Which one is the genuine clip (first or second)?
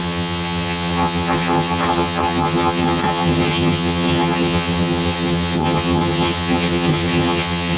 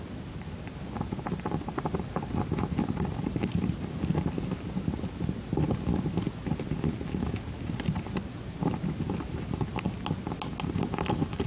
second